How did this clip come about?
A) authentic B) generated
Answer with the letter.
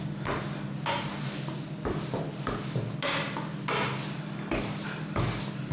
A